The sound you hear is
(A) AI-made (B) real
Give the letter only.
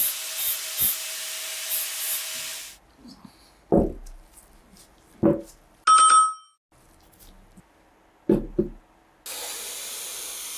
B